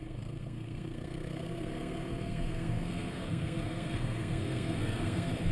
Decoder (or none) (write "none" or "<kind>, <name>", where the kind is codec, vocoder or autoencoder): codec, SNAC